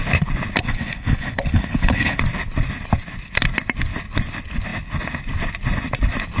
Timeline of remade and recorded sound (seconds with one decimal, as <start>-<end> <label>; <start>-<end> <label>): 0.0-0.6 recorded; 0.6-2.2 remade; 2.2-6.4 recorded